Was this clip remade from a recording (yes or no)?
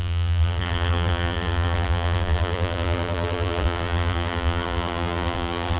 yes